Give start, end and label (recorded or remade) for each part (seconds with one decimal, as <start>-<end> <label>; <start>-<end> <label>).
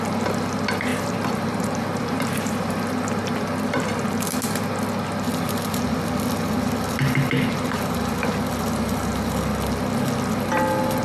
0.0-0.9 recorded; 0.9-2.8 remade; 2.8-11.0 recorded